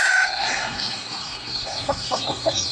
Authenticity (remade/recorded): remade